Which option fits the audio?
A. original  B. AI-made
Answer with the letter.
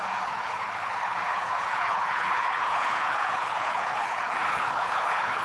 B